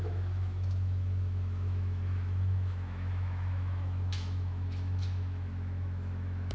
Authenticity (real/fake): fake